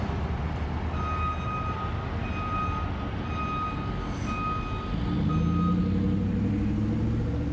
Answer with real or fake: real